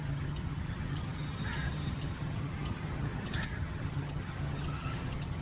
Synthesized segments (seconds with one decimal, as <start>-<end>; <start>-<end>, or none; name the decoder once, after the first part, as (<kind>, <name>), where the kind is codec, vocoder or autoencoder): 0.0-5.4 (vocoder, HiFi-GAN)